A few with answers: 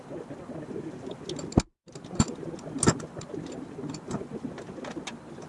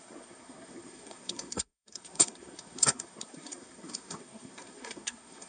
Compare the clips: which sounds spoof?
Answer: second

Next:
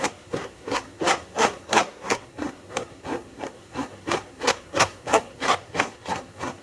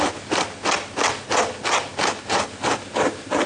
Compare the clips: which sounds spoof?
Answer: first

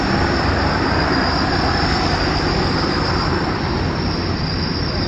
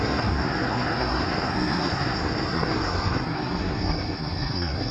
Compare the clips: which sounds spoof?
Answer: second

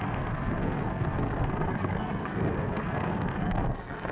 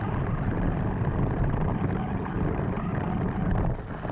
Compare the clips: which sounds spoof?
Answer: first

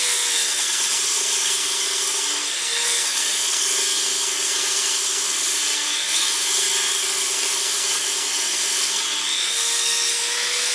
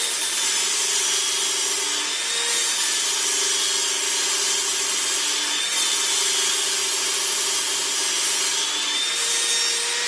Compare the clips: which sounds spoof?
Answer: first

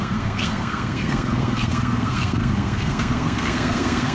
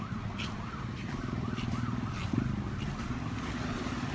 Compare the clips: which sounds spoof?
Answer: first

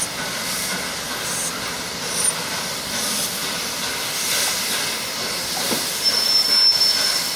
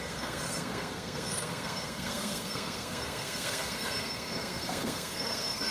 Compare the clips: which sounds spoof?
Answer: second